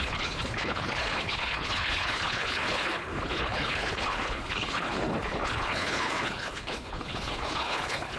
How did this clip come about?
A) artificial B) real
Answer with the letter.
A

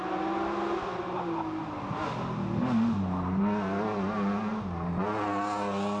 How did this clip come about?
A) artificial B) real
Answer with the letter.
B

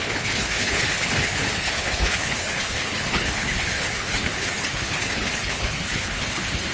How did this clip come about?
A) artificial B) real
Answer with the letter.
A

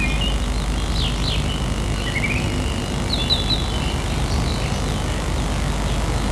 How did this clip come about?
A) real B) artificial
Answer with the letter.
A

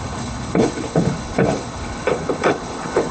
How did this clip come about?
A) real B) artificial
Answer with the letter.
B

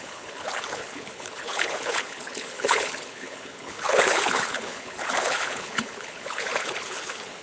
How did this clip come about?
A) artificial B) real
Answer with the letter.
A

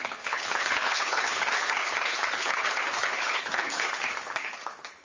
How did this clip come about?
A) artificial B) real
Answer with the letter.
A